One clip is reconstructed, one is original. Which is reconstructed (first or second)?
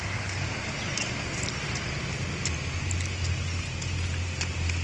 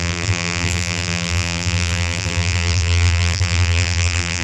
second